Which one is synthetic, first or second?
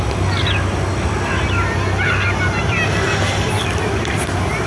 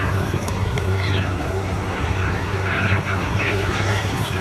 second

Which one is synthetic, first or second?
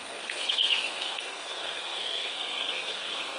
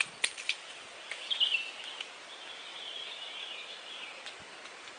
first